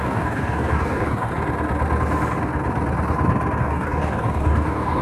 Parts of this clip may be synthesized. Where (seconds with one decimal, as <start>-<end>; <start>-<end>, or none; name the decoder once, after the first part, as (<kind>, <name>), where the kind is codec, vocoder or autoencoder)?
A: 0.0-1.3 (codec, DAC); 3.6-5.0

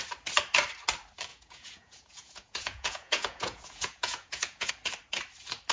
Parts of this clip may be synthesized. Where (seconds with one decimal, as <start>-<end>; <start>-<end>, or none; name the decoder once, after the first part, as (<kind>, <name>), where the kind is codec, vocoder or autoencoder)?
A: 1.3-4.7 (vocoder, Vocos)

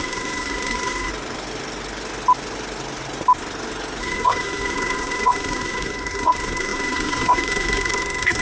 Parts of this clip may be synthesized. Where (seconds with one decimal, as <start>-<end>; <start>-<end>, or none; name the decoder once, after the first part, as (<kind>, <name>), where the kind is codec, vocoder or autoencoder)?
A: 0.0-1.1 (codec, SNAC); 4.0-8.4